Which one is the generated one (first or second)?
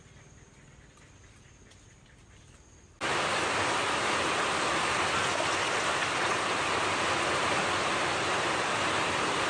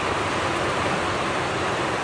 second